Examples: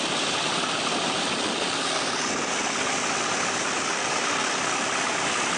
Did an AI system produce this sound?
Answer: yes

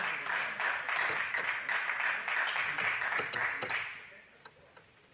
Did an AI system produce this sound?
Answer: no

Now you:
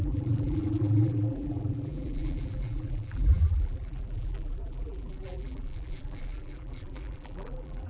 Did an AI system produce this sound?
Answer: yes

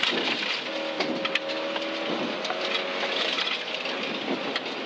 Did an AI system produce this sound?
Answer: no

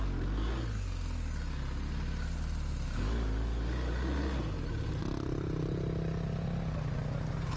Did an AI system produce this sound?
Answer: no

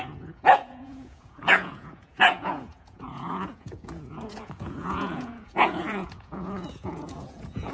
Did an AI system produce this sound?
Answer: yes